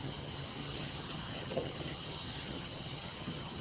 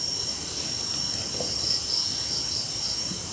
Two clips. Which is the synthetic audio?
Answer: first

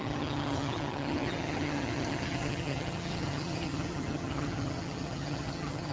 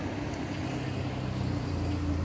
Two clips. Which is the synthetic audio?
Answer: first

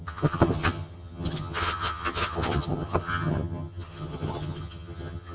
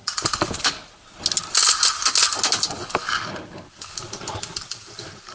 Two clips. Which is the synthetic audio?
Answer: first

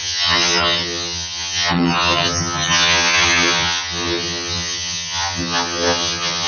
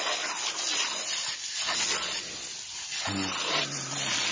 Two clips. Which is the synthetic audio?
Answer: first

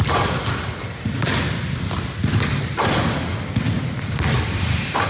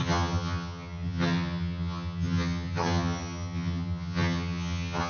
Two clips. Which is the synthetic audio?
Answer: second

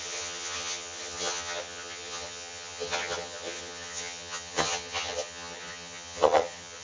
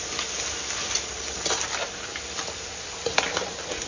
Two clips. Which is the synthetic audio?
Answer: first